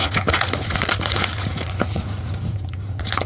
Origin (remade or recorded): remade